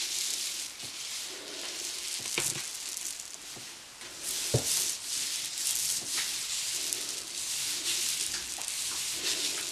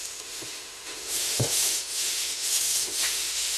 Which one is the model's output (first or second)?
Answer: second